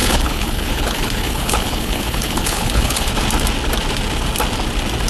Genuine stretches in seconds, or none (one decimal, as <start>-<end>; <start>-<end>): 3.1-5.1